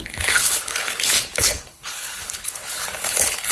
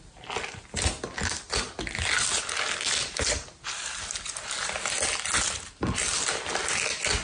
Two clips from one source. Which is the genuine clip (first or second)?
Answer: second